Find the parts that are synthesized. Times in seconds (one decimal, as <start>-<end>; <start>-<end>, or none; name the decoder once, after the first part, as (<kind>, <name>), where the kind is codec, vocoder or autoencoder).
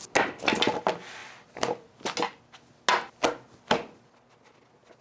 none